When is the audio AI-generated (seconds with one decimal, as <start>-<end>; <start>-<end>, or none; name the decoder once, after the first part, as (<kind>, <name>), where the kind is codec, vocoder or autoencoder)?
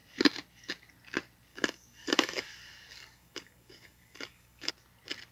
1.5-4.7 (codec, DAC)